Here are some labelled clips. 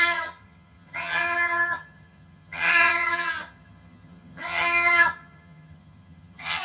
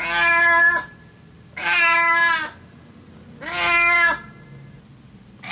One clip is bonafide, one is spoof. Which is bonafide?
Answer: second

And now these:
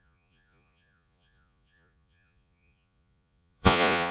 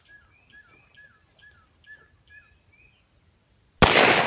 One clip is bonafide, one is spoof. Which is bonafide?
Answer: second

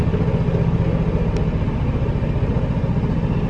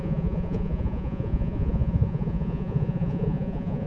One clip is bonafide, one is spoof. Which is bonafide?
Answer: first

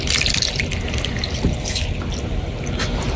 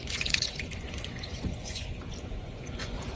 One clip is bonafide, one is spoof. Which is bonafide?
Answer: first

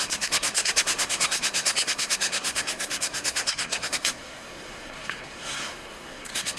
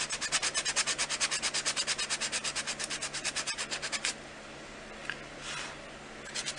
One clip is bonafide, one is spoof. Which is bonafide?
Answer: second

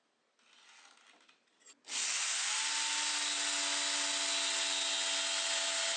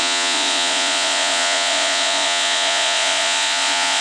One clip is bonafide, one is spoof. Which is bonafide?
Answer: first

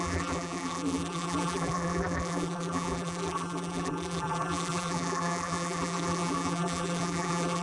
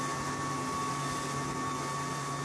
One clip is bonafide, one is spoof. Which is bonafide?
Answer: second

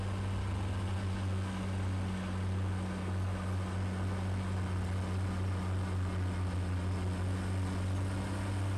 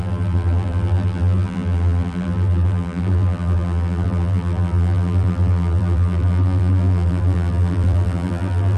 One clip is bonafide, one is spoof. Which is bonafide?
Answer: first